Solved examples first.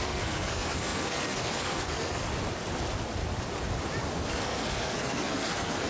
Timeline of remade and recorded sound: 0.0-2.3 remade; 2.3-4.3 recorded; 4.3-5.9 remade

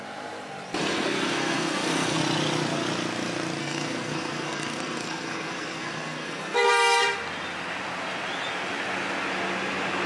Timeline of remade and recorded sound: 0.0-0.8 recorded; 0.8-2.2 remade; 2.2-3.6 recorded; 3.6-6.7 remade; 6.7-10.1 recorded

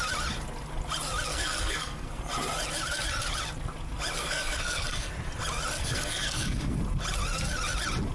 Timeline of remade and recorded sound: 0.0-1.3 recorded; 1.3-2.2 remade; 2.2-4.2 recorded; 4.2-5.1 remade; 5.1-5.8 recorded; 5.8-6.8 remade; 6.8-8.1 recorded

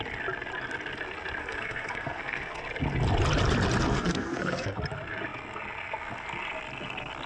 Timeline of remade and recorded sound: 0.0-1.4 recorded; 1.4-2.6 remade; 2.6-3.9 recorded; 3.9-4.8 remade; 4.8-7.3 recorded

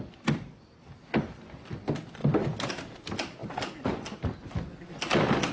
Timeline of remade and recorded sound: 0.0-5.5 recorded

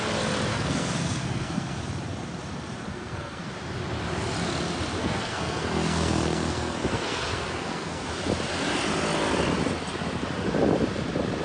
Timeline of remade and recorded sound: 0.0-0.5 recorded; 0.5-1.8 remade; 1.8-2.9 recorded; 2.9-3.5 remade; 3.5-5.0 recorded; 5.0-8.1 remade; 8.1-11.4 recorded